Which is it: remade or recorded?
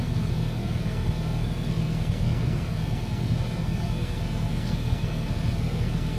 remade